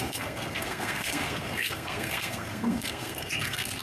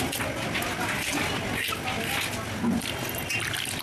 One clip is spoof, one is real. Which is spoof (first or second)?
first